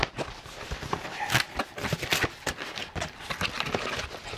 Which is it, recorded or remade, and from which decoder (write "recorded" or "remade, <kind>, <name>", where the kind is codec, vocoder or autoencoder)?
recorded